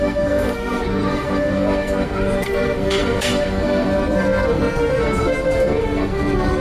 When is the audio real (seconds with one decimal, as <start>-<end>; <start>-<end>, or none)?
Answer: none